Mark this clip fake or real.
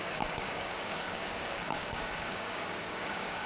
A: fake